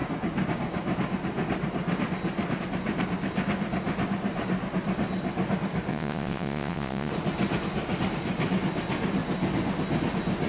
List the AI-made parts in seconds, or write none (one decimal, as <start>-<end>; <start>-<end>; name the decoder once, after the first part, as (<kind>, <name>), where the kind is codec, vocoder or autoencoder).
5.9-7.1 (vocoder, WaveNeXt)